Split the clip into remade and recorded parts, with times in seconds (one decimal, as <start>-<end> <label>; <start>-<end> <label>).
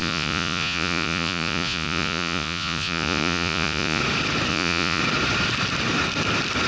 0.0-4.0 remade; 4.0-4.5 recorded; 4.5-5.0 remade; 5.0-6.7 recorded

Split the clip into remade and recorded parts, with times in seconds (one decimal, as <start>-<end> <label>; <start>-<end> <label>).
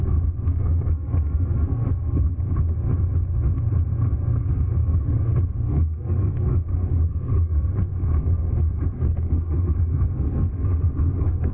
0.0-2.3 remade; 2.3-4.4 recorded; 4.4-11.5 remade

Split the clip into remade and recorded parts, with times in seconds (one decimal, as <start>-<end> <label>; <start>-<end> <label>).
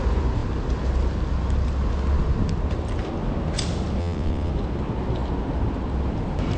0.0-4.0 recorded; 4.0-4.5 remade; 4.5-6.6 recorded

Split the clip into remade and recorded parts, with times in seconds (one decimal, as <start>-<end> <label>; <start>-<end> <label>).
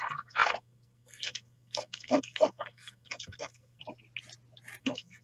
0.0-3.8 remade; 3.8-4.8 recorded; 4.8-5.2 remade